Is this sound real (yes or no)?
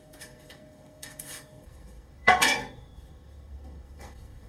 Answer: no